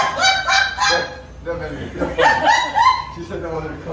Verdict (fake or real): real